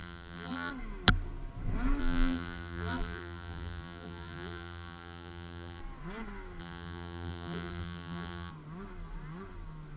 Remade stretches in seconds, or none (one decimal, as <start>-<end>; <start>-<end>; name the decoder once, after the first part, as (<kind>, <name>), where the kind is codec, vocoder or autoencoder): 0.0-0.7 (vocoder, BigVGAN v2); 2.0-5.8; 6.6-8.5